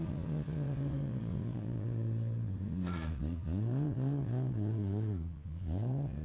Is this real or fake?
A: fake